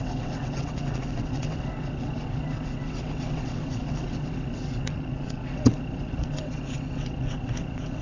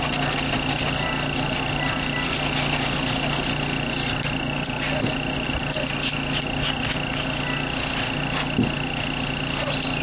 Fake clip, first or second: first